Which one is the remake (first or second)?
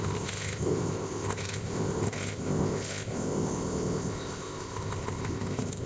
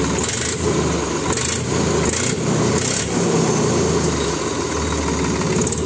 first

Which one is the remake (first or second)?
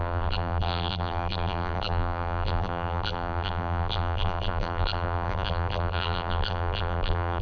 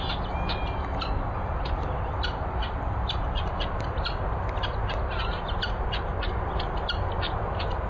first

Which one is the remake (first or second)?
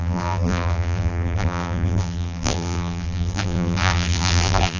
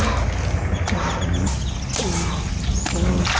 first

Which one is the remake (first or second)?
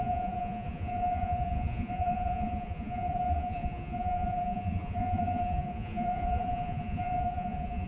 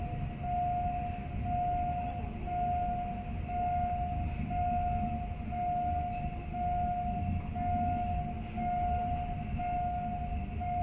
first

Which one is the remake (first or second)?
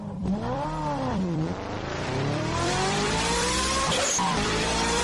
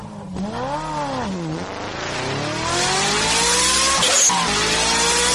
first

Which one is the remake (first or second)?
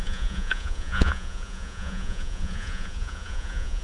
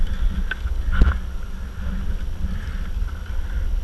first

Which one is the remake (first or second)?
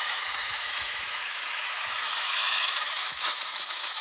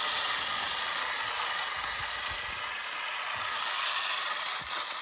first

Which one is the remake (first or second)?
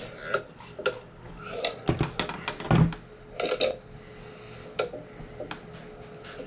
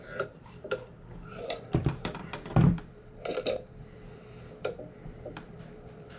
second